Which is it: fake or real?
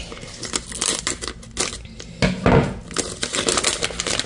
real